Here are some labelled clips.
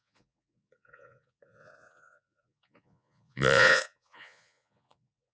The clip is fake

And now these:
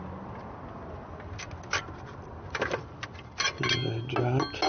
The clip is real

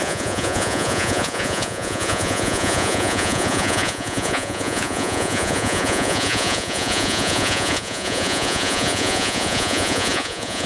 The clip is fake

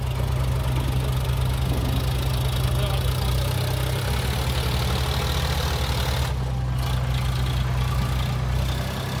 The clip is real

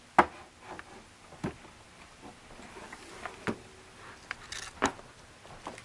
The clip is real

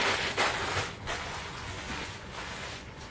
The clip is fake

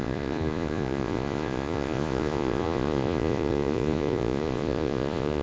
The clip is fake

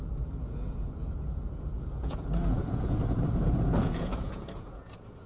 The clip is fake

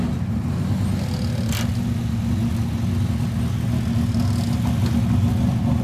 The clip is real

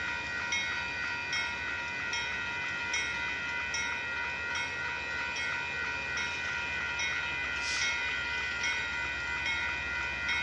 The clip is real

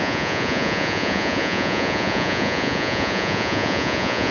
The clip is fake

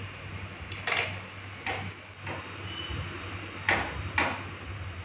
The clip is real